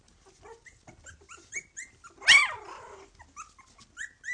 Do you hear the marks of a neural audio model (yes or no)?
no